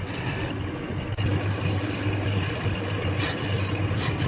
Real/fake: real